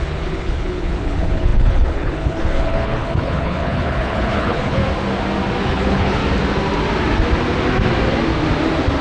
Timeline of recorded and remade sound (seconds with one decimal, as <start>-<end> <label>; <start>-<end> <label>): 0.0-4.8 remade; 4.8-5.6 recorded; 5.6-6.2 remade; 6.2-9.0 recorded